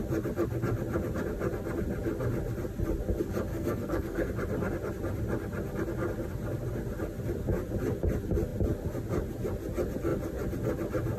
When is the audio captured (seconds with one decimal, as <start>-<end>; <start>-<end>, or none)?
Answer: 0.0-3.5; 4.3-11.2